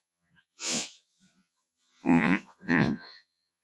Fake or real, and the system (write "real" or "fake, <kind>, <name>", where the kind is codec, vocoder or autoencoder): fake, vocoder, Vocos